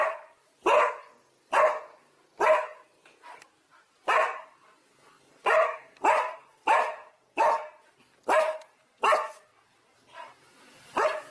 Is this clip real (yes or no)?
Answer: yes